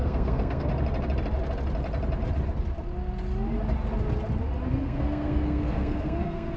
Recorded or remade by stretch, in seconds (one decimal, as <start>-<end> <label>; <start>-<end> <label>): 0.0-0.7 remade; 0.7-4.7 recorded; 4.7-6.6 remade